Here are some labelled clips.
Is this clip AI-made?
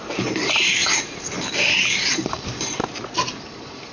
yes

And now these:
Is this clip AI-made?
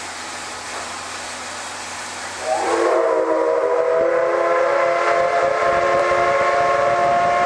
no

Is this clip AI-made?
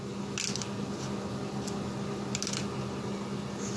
no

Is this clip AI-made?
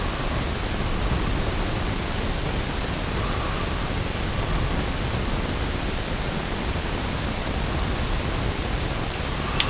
no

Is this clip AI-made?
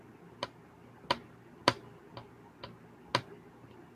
no